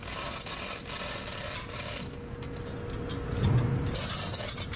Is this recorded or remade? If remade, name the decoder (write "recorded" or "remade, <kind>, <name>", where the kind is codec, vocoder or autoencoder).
recorded